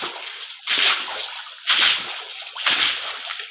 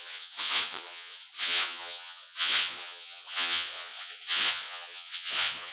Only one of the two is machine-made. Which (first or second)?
second